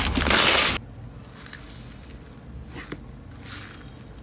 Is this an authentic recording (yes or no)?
yes